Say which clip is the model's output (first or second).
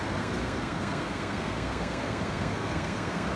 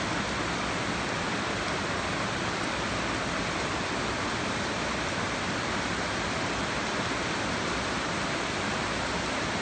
first